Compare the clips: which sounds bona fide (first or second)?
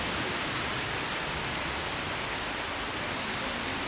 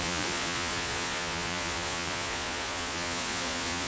first